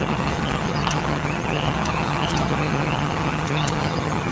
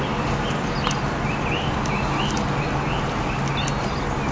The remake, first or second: first